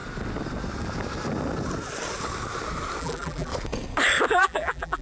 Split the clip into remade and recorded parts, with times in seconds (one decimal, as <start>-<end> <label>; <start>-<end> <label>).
0.0-3.0 recorded; 3.0-3.5 remade; 3.5-4.3 recorded; 4.3-5.0 remade

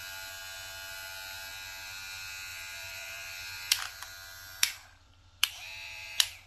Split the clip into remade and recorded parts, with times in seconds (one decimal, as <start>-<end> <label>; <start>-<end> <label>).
0.0-2.5 recorded; 2.5-6.5 remade

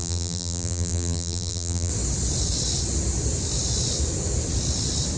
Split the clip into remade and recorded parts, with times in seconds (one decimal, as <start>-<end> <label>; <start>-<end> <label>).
0.0-1.9 remade; 1.9-5.2 recorded

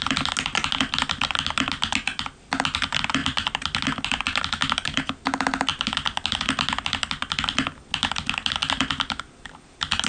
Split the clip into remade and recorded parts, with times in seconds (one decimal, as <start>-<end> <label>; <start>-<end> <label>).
0.0-3.2 recorded; 3.2-4.4 remade; 4.4-10.1 recorded

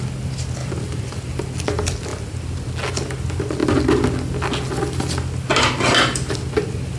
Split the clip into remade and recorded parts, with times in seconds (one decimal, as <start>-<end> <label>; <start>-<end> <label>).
0.0-7.0 recorded

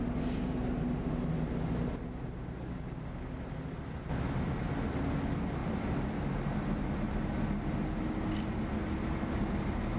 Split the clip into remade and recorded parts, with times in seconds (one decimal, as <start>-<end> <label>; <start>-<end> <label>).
0.0-10.0 recorded

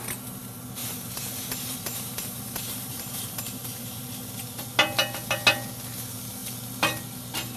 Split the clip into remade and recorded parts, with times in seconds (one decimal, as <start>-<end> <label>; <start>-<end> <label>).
0.0-0.8 recorded; 0.8-4.1 remade; 4.1-7.6 recorded

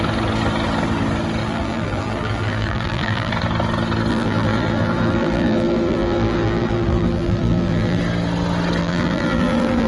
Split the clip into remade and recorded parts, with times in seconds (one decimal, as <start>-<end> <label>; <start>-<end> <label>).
0.0-1.4 recorded; 1.4-3.3 remade; 3.3-4.1 recorded; 4.1-8.0 remade; 8.0-8.8 recorded; 8.8-9.9 remade